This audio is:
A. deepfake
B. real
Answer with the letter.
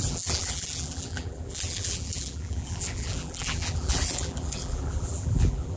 A